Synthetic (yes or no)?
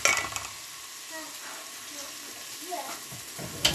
no